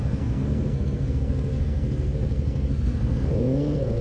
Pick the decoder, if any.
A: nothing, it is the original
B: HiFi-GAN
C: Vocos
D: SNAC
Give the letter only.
D